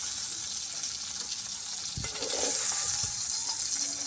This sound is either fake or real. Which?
real